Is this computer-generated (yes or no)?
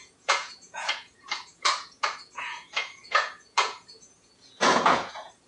yes